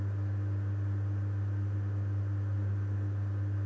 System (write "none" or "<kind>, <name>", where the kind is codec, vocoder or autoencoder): none